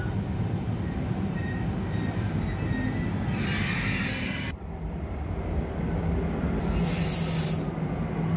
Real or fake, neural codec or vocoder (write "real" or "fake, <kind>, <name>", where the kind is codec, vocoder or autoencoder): real